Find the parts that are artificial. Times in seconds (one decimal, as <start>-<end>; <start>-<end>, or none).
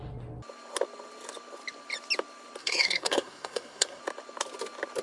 2.6-4.0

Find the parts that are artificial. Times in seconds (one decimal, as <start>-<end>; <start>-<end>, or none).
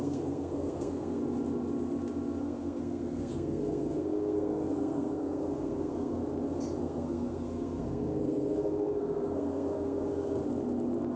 0.0-1.2; 2.4-6.2; 6.8-10.4